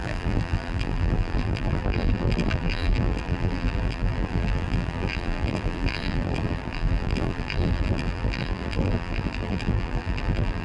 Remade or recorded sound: remade